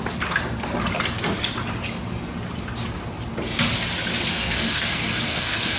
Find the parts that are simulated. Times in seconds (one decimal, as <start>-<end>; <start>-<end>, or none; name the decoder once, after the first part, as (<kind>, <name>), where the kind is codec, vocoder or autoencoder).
4.3-5.8 (codec, SNAC)